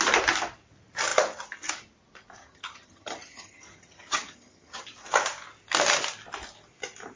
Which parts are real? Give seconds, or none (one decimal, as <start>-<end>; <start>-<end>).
0.0-2.4; 4.8-7.2